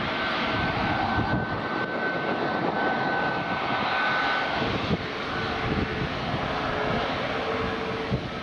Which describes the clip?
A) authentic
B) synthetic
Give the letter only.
A